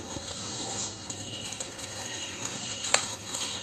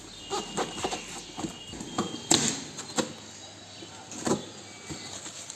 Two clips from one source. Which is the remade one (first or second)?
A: first